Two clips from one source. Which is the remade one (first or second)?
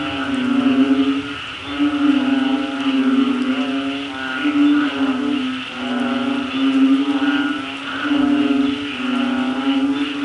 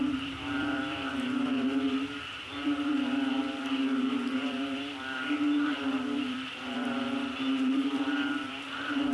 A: second